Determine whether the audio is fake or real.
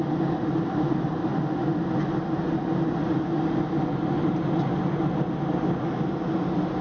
real